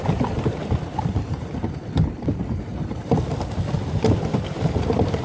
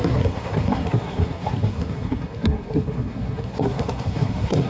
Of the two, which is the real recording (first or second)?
first